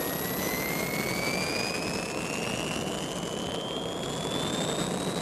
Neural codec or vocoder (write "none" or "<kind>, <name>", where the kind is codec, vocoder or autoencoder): none